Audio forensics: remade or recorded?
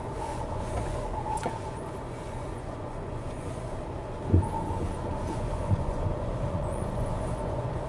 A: remade